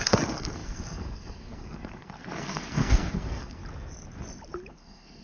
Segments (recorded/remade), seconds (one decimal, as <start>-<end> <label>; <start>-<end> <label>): 0.0-3.6 remade; 3.6-4.7 recorded; 4.7-5.2 remade